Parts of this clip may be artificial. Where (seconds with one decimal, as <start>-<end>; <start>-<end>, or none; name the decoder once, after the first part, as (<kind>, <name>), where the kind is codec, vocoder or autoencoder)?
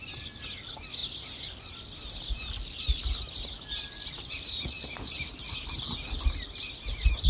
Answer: none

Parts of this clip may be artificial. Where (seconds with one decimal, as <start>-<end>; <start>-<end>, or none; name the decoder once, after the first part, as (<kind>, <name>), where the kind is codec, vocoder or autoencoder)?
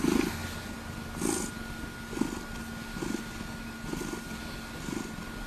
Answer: none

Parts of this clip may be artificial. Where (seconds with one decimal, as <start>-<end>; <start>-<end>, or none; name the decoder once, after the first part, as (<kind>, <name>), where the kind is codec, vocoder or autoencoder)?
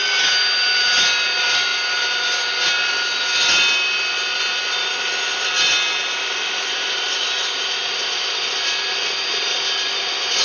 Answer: none